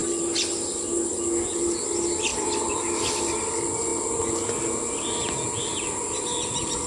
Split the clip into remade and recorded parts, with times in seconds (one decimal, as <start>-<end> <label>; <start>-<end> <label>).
0.0-2.3 recorded; 2.3-3.2 remade; 3.2-6.9 recorded